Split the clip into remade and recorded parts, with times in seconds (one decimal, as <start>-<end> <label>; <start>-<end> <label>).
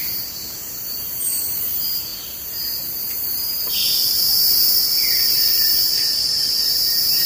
0.0-7.3 remade